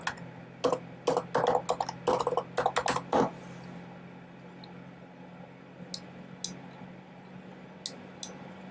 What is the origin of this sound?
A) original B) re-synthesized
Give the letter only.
A